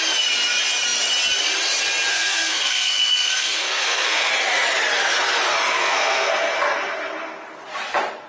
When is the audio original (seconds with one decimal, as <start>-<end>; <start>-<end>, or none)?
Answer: 0.0-2.1; 4.3-5.8; 6.3-8.3